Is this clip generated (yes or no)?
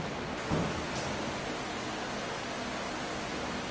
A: no